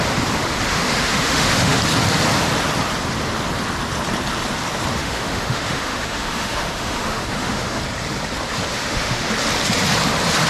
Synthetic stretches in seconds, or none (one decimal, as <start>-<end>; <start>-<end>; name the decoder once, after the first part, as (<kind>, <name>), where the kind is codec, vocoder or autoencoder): 0.7-1.8 (autoencoder, DAC-VAE); 5.0-7.8; 8.7-9.3